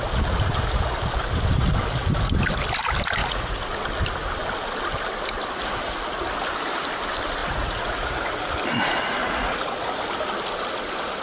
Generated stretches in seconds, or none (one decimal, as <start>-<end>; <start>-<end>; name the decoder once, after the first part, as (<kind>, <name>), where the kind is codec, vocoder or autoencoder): 3.2-3.8 (vocoder, Vocos); 7.4-8.5; 9.2-9.9